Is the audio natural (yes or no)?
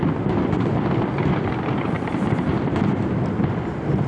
yes